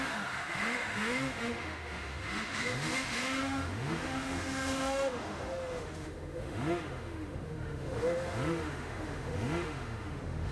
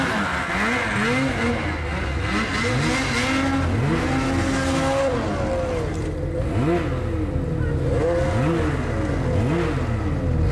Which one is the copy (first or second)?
first